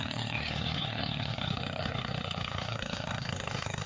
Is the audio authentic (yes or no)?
no